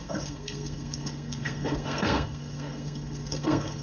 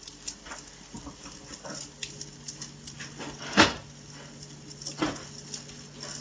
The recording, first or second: second